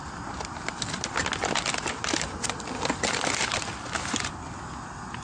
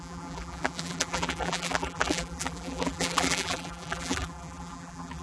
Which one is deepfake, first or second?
second